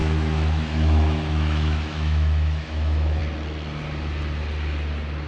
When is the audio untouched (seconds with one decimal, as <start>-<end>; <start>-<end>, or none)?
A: 3.2-5.3